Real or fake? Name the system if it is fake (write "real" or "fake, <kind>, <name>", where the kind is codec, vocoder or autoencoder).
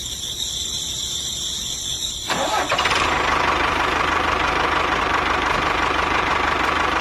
fake, vocoder, BigVGAN v2